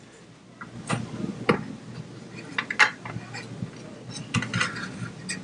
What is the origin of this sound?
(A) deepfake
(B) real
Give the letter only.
B